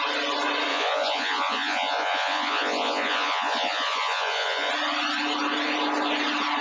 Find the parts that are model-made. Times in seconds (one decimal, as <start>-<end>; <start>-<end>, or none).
0.7-4.7